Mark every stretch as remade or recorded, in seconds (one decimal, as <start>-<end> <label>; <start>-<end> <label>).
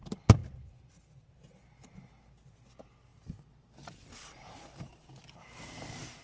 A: 0.0-0.4 recorded; 0.4-1.3 remade; 1.3-3.1 recorded; 3.1-5.2 remade; 5.2-6.2 recorded